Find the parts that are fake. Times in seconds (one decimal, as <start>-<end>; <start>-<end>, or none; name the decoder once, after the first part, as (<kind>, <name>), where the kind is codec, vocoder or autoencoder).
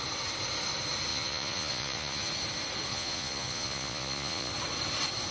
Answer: 1.1-2.3 (vocoder, Vocos); 2.9-4.5